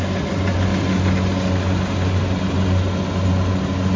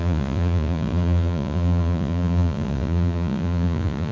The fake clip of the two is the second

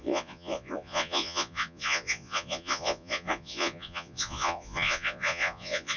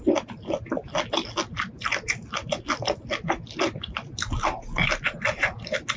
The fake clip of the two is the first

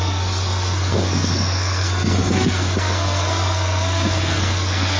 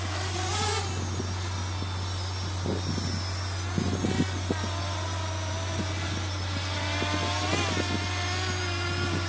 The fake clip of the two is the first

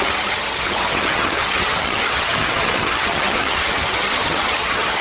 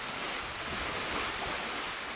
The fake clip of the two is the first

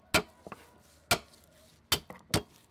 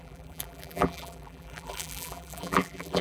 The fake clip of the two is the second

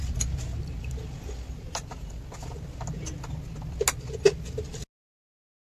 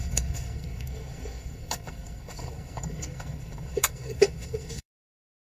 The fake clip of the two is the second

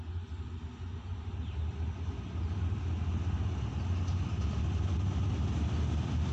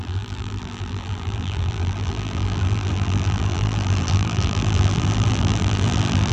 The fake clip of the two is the second